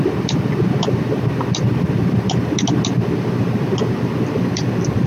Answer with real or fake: real